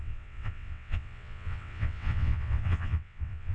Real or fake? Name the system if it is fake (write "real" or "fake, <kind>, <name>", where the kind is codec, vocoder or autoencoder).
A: fake, vocoder, WaveNeXt